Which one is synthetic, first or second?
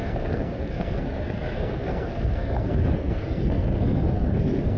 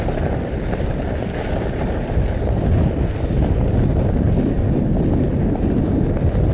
first